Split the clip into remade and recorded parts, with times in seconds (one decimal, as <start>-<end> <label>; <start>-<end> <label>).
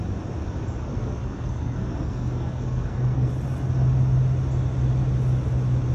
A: 0.0-0.9 recorded; 0.9-3.3 remade; 3.3-5.9 recorded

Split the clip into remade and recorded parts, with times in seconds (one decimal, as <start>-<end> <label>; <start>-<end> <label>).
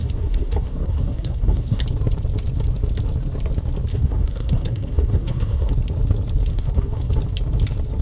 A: 0.0-1.8 remade; 1.8-3.9 recorded; 3.9-5.7 remade; 5.7-6.5 recorded; 6.5-7.1 remade; 7.1-8.0 recorded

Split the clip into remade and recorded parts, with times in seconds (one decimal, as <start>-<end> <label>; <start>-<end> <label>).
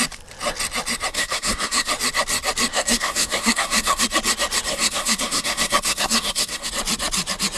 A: 0.0-1.1 recorded; 1.1-1.9 remade; 1.9-2.7 recorded; 2.7-4.0 remade; 4.0-4.7 recorded; 4.7-6.7 remade; 6.7-7.6 recorded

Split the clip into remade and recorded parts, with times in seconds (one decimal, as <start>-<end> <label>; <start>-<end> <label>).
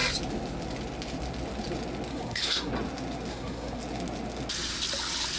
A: 0.0-2.1 recorded; 2.1-2.7 remade; 2.7-3.3 recorded; 3.3-3.8 remade; 3.8-5.4 recorded